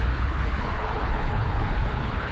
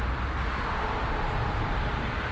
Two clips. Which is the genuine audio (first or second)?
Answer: second